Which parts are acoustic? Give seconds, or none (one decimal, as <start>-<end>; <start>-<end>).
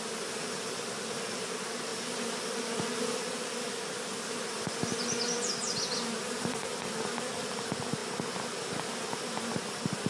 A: 0.0-10.1